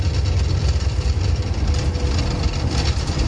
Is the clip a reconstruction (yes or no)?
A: yes